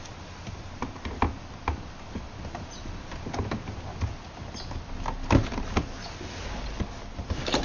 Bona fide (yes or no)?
yes